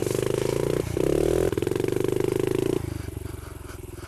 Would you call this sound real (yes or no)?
yes